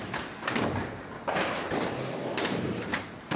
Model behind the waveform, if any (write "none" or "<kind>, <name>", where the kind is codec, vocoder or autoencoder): vocoder, BigVGAN v2